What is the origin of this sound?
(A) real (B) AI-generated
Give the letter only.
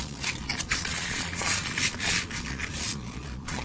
B